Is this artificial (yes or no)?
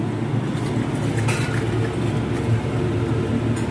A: no